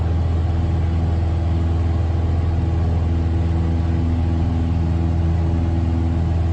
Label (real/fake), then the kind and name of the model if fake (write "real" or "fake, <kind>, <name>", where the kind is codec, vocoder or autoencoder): real